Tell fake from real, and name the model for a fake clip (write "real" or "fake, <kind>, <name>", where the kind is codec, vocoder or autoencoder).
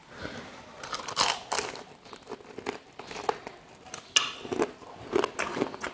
real